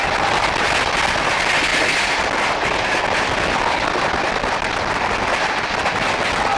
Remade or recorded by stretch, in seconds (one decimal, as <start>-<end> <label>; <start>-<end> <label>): 0.0-6.6 recorded